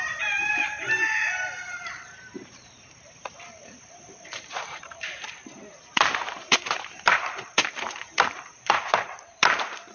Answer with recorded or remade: remade